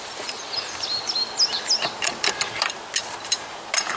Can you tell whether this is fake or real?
real